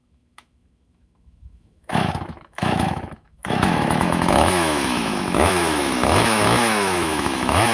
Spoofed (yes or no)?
yes